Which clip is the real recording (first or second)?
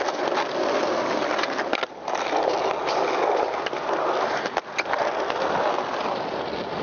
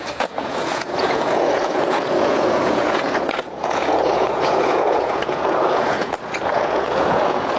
first